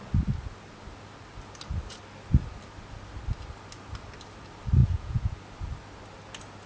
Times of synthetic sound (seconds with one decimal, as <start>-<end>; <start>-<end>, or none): 4.8-5.4